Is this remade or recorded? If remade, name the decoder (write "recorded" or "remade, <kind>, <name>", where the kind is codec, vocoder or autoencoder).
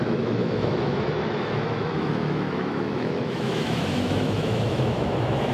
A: remade, autoencoder, DAC-VAE